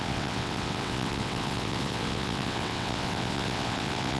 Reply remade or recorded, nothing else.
remade